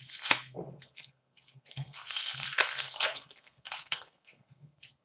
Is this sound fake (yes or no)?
yes